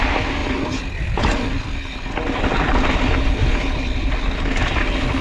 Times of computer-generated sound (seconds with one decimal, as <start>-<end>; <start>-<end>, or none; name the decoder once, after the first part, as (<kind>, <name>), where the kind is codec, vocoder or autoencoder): none